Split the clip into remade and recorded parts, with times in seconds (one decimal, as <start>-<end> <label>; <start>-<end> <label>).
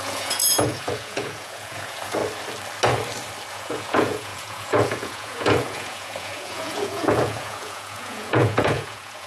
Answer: 0.0-2.2 remade; 2.2-3.5 recorded; 3.5-9.3 remade